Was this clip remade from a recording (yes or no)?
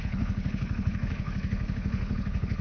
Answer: yes